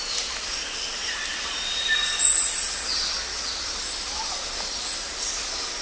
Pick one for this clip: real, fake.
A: real